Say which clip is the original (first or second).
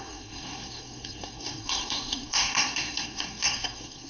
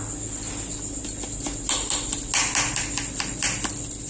second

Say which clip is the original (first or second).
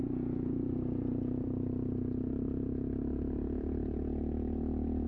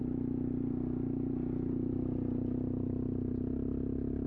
second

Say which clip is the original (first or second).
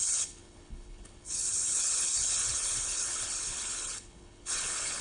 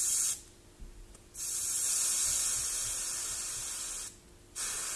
second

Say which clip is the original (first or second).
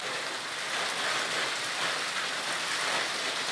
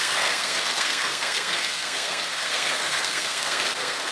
first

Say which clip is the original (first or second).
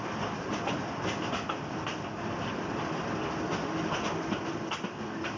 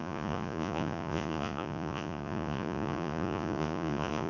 first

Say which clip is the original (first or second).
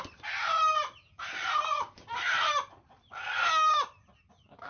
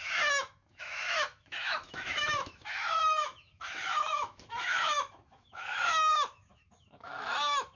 first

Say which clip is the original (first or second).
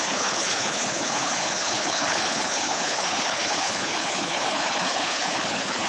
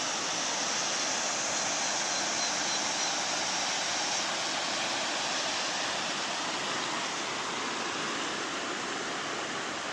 second